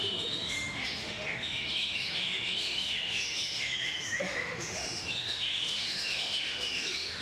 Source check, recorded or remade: remade